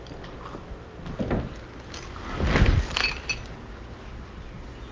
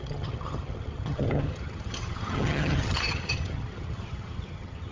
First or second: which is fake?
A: second